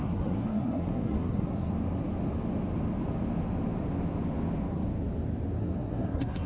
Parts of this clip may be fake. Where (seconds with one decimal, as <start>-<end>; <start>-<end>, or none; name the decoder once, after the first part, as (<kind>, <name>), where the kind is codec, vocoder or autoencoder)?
0.0-1.7 (codec, SNAC); 5.6-6.5